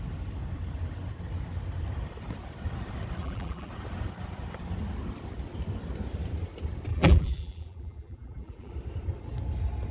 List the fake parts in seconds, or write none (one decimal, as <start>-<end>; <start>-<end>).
3.2-3.7; 6.9-8.7